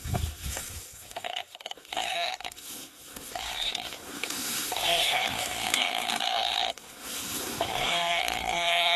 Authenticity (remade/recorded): remade